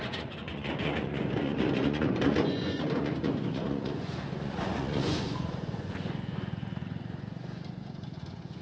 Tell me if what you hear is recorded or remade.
remade